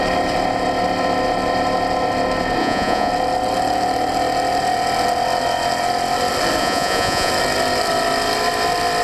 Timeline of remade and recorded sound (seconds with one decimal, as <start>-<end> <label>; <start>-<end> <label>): 0.0-2.6 recorded; 2.6-3.1 remade; 3.1-6.6 recorded; 6.6-7.3 remade; 7.3-9.0 recorded